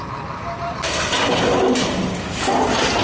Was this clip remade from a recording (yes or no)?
no